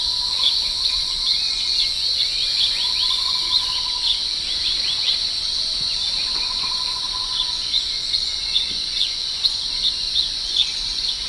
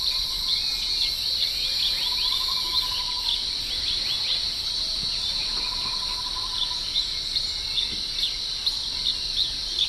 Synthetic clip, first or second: first